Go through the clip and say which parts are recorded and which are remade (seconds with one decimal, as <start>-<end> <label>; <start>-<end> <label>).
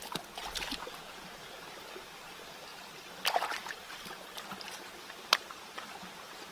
0.0-6.5 recorded